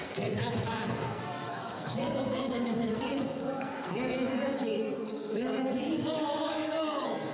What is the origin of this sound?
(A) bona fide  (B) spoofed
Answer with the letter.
B